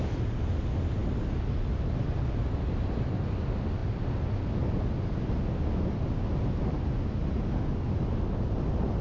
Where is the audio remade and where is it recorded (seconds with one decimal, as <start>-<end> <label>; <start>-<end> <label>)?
0.0-9.0 recorded